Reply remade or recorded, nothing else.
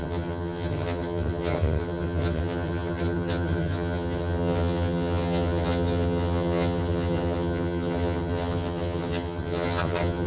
remade